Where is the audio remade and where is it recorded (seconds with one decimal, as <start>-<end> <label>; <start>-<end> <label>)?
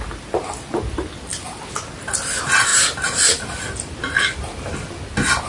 0.0-2.7 recorded; 2.7-3.6 remade; 3.6-5.5 recorded